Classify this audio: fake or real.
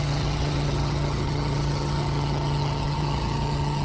fake